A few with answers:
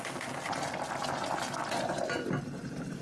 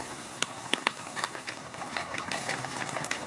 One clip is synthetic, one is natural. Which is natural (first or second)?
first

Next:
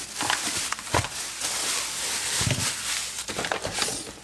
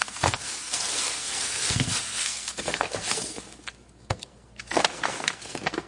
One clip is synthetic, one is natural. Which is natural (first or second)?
first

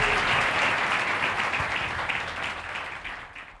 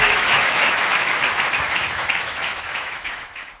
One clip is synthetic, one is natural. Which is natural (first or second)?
first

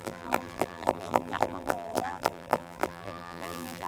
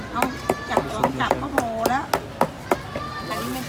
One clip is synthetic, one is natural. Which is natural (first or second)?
second